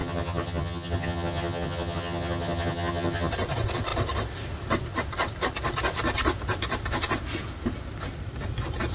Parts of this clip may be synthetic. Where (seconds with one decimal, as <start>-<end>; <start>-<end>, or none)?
0.0-3.3